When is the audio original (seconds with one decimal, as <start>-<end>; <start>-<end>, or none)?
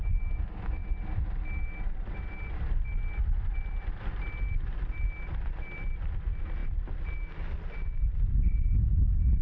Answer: 0.0-9.4